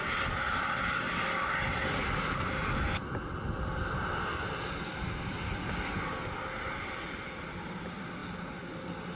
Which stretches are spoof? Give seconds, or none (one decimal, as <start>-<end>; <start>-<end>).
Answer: none